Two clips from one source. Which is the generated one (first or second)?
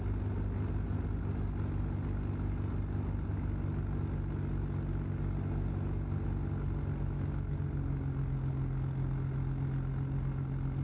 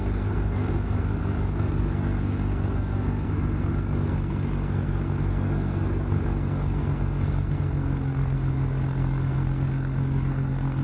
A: second